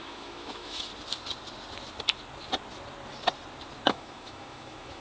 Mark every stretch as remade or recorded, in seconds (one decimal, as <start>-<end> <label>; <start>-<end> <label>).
0.0-0.9 remade; 0.9-3.9 recorded; 3.9-5.0 remade